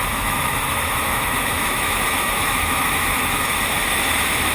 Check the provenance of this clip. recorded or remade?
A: remade